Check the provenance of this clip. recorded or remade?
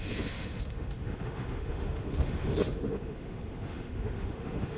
remade